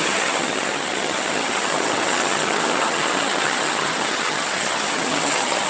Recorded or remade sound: remade